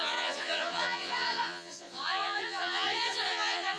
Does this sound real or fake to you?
fake